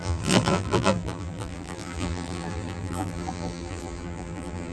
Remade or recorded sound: remade